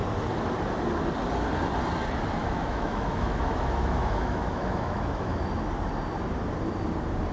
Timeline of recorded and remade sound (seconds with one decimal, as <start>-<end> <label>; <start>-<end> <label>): 0.0-2.4 recorded; 2.4-5.4 remade; 5.4-7.3 recorded